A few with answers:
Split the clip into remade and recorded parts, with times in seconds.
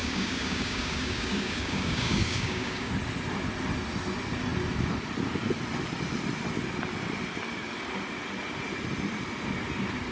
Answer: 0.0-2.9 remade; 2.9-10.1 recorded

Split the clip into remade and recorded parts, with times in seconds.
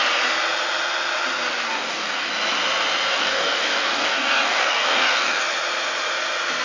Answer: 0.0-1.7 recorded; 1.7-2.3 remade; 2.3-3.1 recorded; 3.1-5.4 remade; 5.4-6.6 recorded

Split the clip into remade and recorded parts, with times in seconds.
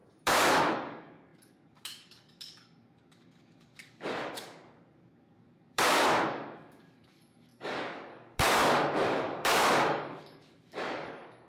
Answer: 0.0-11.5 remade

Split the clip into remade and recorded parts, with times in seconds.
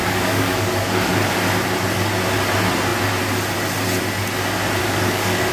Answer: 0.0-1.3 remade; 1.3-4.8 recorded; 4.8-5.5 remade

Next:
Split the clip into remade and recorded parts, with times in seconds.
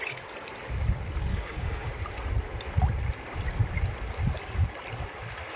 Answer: 0.0-1.3 recorded; 1.3-1.9 remade; 1.9-5.6 recorded